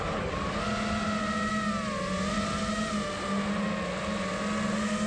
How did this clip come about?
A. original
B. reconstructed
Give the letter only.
A